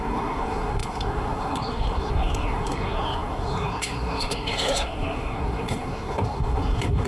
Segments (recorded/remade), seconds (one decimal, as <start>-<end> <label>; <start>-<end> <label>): 0.0-7.1 remade